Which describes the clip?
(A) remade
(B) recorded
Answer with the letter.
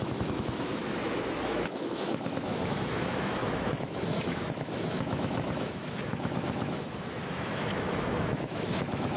A